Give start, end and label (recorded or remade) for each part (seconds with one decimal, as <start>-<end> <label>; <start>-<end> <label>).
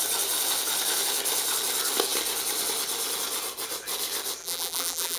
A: 0.0-4.4 recorded; 4.4-5.2 remade